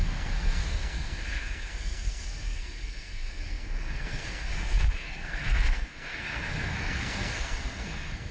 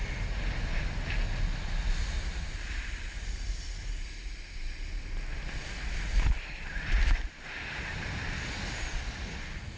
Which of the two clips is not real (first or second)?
first